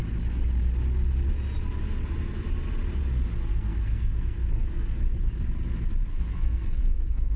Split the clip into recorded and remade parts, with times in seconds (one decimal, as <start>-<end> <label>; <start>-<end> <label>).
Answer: 0.0-3.5 recorded; 3.5-5.0 remade; 5.0-6.1 recorded; 6.1-7.4 remade